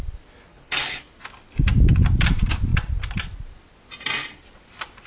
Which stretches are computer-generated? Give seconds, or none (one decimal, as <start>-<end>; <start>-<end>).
0.5-1.0